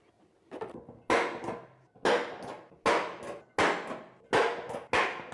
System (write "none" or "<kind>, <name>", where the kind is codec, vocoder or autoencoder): none